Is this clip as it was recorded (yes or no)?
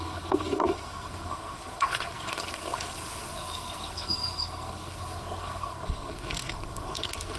no